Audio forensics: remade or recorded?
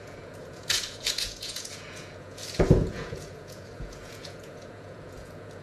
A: remade